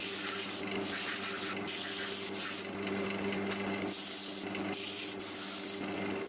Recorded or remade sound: recorded